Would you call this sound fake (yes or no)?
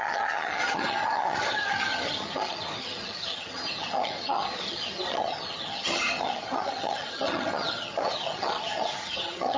yes